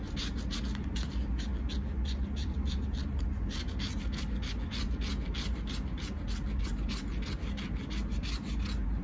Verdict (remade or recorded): recorded